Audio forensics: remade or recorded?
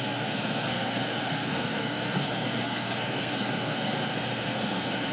remade